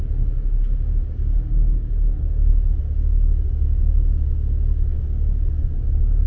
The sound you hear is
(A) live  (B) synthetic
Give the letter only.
A